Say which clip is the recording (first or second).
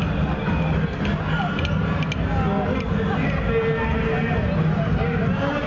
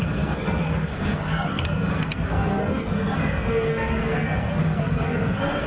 first